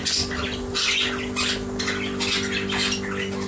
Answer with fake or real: real